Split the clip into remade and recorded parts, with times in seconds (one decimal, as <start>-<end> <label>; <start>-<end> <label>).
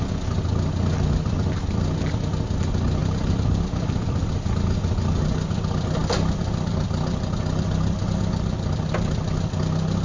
0.0-3.0 recorded; 3.0-4.3 remade; 4.3-10.0 recorded